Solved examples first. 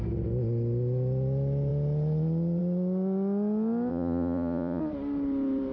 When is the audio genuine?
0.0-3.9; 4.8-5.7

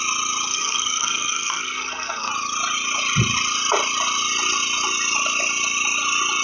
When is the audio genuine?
0.0-0.5; 2.3-6.4

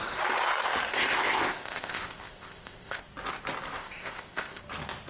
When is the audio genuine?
0.0-0.9; 3.0-3.8; 4.6-5.1

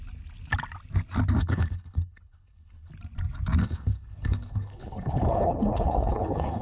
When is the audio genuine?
0.0-1.4; 2.9-3.6

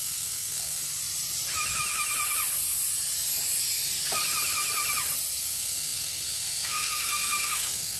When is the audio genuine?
0.8-5.4

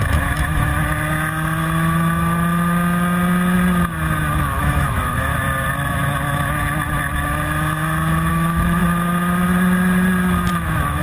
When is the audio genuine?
0.7-4.4; 5.3-8.3; 8.8-10.5

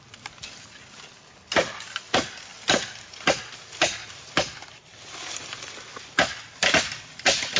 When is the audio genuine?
0.0-7.6